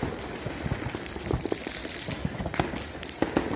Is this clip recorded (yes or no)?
yes